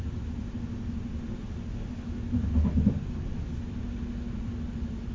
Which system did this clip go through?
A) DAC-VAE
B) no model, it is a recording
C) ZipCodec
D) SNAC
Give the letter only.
B